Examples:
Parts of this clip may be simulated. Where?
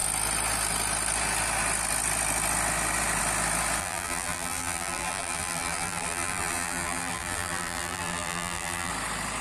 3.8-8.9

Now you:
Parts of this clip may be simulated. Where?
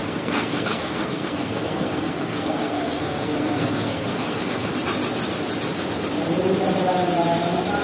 0.0-4.7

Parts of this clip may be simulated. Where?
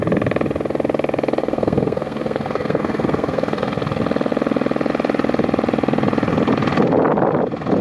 1.4-3.8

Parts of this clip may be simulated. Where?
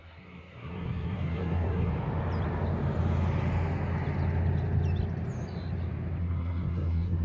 0.0-1.9; 6.2-7.2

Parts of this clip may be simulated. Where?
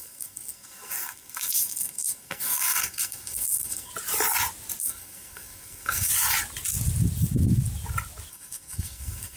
0.0-3.9; 4.8-6.1; 8.3-9.4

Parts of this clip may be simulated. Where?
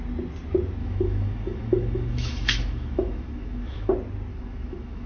0.8-3.9; 4.3-5.1